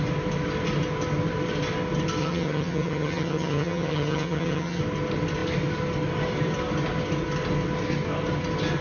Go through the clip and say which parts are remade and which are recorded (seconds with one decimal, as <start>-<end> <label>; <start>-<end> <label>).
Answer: 0.0-2.2 recorded; 2.2-4.8 remade; 4.8-8.8 recorded